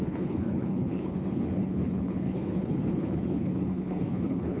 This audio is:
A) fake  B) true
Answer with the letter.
A